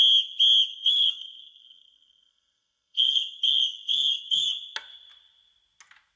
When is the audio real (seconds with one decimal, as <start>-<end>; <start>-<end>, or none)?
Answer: 0.0-0.7; 4.4-6.2